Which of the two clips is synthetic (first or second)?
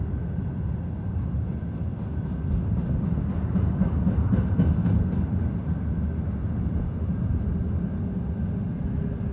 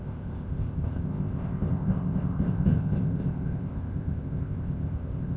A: second